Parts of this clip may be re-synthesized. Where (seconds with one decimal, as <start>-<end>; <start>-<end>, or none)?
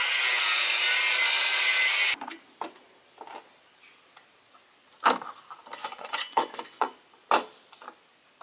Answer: 5.8-7.0